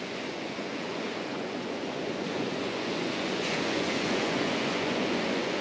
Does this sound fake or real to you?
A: fake